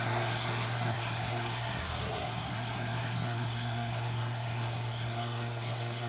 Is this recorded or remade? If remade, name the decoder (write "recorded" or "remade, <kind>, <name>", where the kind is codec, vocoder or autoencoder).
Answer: remade, codec, SNAC